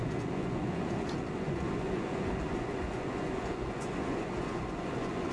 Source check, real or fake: fake